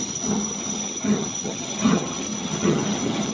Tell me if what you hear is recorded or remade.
remade